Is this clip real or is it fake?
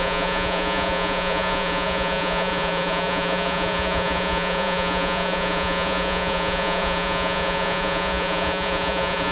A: fake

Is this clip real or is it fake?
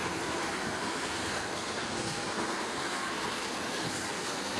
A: fake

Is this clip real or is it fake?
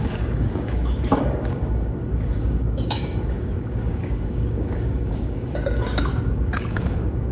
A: fake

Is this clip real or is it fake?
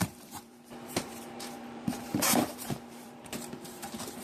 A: fake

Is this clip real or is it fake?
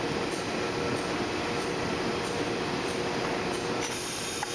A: real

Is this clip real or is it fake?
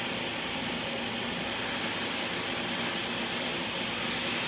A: real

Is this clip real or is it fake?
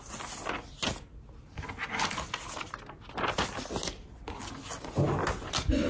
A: real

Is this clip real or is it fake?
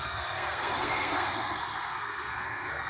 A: fake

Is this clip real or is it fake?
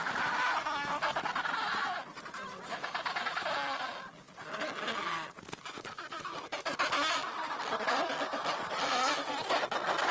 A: real